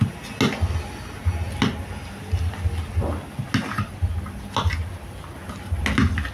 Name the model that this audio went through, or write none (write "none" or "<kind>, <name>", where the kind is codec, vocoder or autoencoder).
none